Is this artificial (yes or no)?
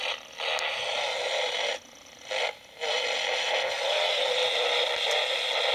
no